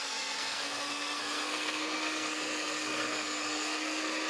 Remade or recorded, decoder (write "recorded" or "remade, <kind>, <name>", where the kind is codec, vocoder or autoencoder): remade, codec, SNAC